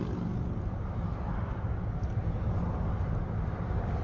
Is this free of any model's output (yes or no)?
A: yes